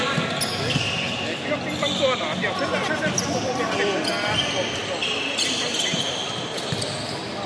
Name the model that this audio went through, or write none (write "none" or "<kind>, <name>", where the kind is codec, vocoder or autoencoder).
none